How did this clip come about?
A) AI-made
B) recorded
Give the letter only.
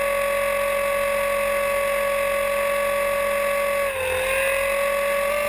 B